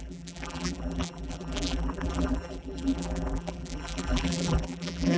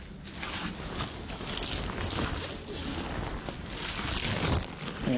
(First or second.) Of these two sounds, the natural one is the second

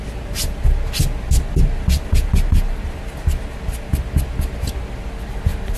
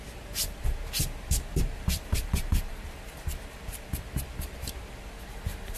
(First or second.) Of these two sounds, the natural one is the first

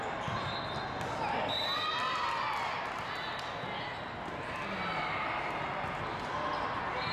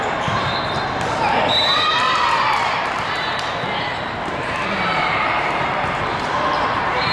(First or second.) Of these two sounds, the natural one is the first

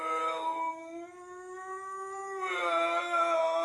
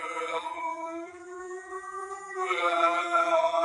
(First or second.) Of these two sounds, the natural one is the first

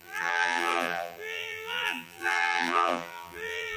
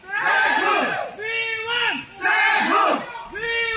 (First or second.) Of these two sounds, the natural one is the second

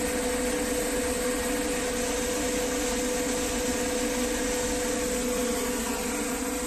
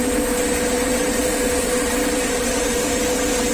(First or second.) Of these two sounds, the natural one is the first